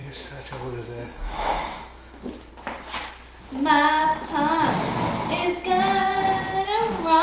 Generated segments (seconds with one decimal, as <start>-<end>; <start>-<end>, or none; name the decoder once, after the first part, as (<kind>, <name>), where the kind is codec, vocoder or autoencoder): 0.0-2.5 (autoencoder, DAC-VAE)